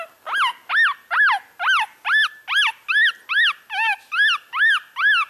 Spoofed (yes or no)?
no